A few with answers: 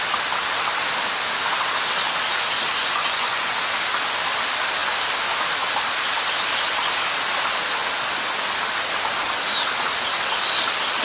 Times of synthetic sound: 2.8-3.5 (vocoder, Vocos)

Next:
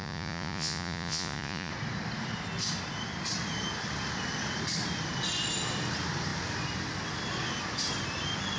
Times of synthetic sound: 0.0-1.7 (vocoder, Vocos)

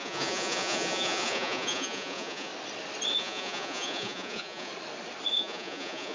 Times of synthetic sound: 0.0-2.5 (vocoder, Vocos); 3.2-4.7; 5.3-6.1

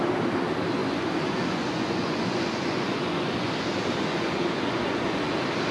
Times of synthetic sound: 0.8-3.5 (vocoder, Vocos); 4.1-5.2

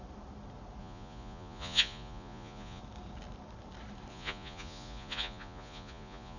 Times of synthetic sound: 0.8-2.8 (vocoder, Vocos); 4.1-6.4

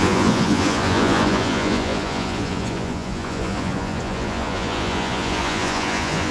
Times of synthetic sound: 0.0-6.3 (vocoder, Vocos)

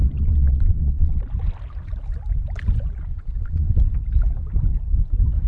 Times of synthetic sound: 0.0-1.2 (vocoder, Vocos); 3.1-3.8

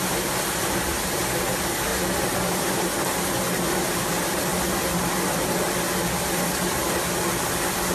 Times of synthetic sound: none